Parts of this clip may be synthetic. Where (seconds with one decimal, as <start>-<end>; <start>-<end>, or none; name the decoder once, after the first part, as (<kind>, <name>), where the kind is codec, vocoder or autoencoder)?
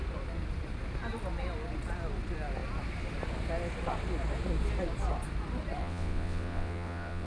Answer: 5.8-7.3 (vocoder, WaveNeXt)